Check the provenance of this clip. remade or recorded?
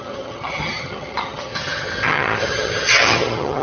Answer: remade